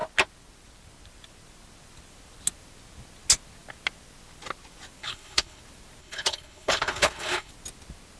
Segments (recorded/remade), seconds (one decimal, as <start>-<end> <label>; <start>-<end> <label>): 0.0-5.0 recorded; 5.0-5.6 remade; 5.6-6.0 recorded; 6.0-7.5 remade; 7.5-8.2 recorded